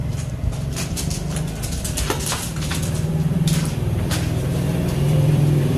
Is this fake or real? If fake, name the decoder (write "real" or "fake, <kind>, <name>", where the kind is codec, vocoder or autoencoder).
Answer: fake, vocoder, BigVGAN v2